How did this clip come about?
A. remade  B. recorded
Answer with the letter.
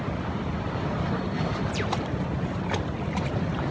A